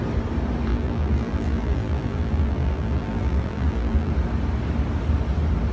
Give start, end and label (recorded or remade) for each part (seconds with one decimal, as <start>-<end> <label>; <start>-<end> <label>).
0.0-0.7 recorded; 0.7-4.1 remade; 4.1-5.7 recorded